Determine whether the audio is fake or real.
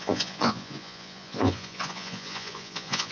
fake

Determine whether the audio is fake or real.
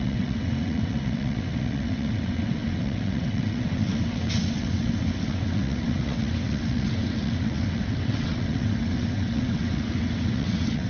fake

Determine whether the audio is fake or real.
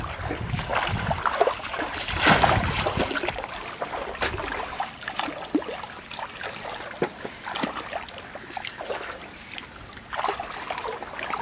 real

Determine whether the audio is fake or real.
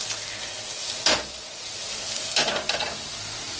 real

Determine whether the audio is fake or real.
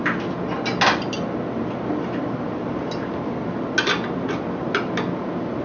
real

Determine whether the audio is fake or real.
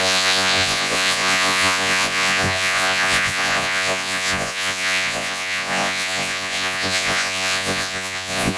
fake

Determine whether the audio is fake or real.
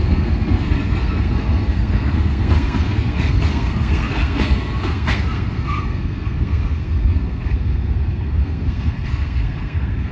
fake